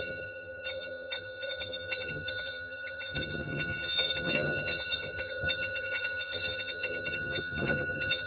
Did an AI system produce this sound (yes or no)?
yes